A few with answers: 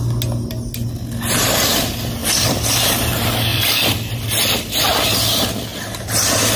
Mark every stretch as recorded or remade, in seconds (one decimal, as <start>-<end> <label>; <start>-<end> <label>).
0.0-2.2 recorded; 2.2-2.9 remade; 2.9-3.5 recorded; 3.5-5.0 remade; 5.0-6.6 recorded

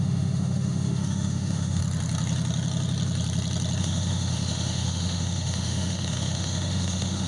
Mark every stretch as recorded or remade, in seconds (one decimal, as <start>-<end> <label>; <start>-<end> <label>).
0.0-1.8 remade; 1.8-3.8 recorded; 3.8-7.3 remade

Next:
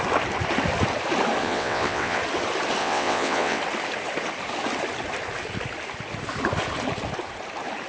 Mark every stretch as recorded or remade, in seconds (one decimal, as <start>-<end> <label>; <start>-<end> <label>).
0.0-1.4 recorded; 1.4-2.2 remade; 2.2-2.8 recorded; 2.8-3.6 remade; 3.6-7.9 recorded

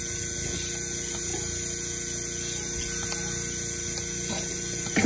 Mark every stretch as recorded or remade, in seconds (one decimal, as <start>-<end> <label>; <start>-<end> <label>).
0.0-5.1 recorded

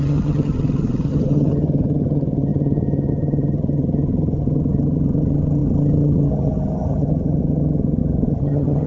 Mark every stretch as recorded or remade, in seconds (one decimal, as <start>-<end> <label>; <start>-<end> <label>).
0.0-8.9 remade